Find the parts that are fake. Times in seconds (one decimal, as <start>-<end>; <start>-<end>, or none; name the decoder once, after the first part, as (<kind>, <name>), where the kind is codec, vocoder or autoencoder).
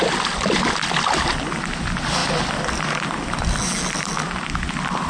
none